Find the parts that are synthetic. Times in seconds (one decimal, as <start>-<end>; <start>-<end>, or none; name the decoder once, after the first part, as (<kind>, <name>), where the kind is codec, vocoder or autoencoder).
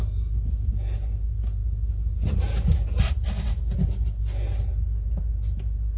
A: none